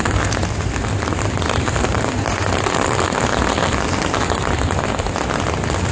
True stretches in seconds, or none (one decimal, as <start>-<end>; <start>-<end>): 0.0-5.9